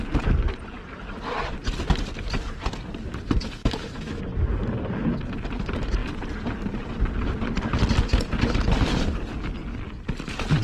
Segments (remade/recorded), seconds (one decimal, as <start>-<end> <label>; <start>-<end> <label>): 0.0-3.6 recorded; 3.6-4.2 remade; 4.2-10.6 recorded